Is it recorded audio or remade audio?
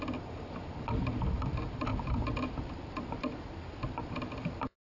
recorded